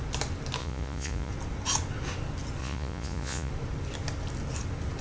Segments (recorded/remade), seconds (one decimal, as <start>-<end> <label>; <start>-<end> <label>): 0.0-0.6 recorded; 0.6-1.3 remade; 1.3-2.6 recorded; 2.6-3.5 remade; 3.5-5.0 recorded